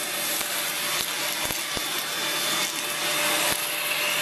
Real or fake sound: real